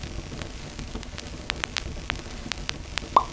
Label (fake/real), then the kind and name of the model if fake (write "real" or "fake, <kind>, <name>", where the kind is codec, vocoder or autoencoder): real